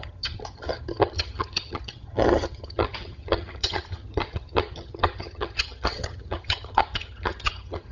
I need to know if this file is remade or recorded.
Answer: remade